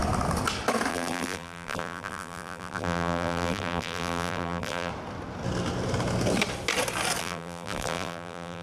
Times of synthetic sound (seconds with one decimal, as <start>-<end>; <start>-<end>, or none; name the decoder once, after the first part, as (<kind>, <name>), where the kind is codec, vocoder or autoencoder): 0.9-4.9 (vocoder, BigVGAN v2); 7.2-8.6